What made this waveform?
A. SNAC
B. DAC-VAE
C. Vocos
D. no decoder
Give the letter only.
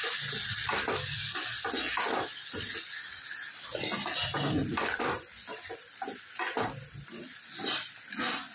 D